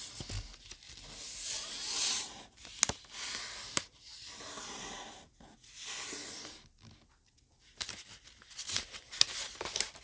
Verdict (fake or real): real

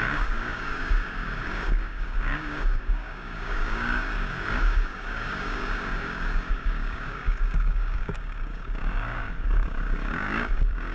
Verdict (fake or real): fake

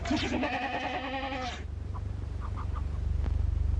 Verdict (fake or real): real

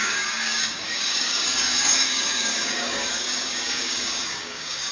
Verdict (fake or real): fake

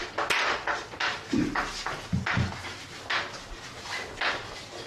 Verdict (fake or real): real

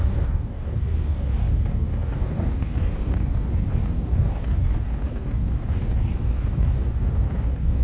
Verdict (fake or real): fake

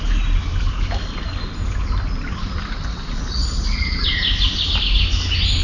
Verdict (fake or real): real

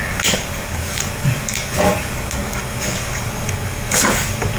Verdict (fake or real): fake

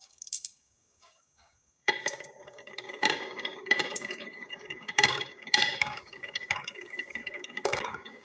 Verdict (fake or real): fake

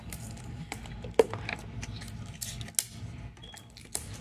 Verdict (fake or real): real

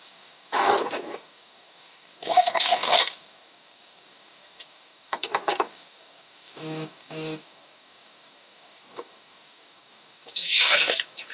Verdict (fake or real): fake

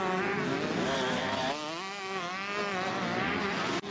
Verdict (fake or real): real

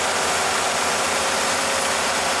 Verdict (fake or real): real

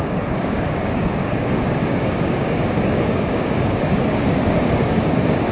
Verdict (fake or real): fake